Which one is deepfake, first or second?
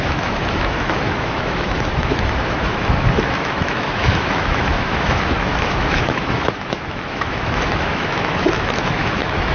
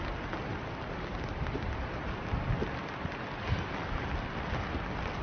first